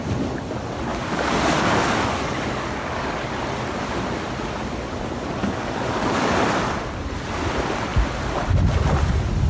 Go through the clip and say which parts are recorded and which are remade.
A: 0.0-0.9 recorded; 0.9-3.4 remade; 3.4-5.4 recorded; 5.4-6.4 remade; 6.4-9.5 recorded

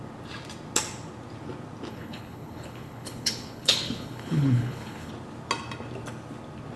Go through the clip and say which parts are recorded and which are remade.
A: 0.0-1.9 recorded; 1.9-5.1 remade; 5.1-6.8 recorded